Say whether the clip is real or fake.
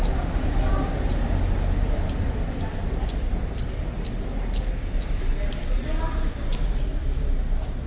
real